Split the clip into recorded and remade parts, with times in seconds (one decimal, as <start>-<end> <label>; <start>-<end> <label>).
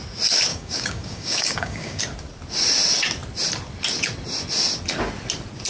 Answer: 0.0-0.5 recorded; 0.5-2.0 remade; 2.0-5.7 recorded